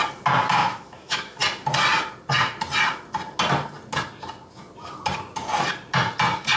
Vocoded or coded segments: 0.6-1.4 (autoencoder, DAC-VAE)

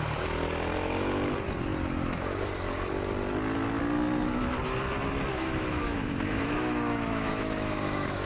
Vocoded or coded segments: 5.3-8.3 (autoencoder, DAC-VAE)

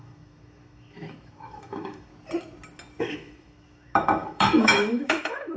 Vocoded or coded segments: 0.0-2.1 (autoencoder, DAC-VAE); 3.0-5.6

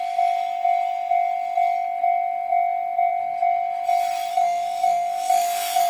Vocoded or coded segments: 4.3-5.9 (autoencoder, DAC-VAE)

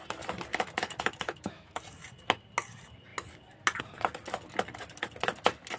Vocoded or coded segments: 0.5-1.8 (autoencoder, DAC-VAE)